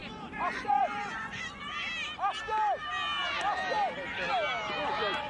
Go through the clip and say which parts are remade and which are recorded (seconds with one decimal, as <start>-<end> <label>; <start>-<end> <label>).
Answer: 0.0-1.6 remade; 1.6-5.3 recorded